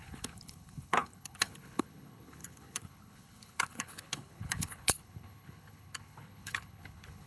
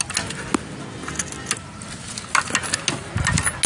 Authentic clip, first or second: second